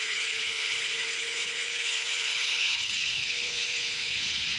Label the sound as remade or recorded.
remade